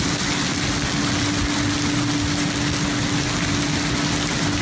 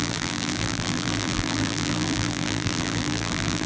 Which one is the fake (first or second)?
second